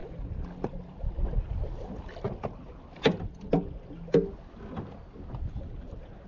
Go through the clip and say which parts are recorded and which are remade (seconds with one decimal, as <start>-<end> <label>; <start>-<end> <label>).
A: 0.0-6.3 recorded